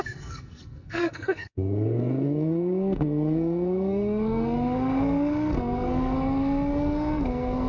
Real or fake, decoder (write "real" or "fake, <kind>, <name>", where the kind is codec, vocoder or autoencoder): fake, codec, SNAC